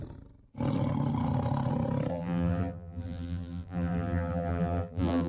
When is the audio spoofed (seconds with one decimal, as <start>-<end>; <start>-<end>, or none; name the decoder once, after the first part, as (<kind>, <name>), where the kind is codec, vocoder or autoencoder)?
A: 2.1-5.3 (vocoder, BigVGAN v2)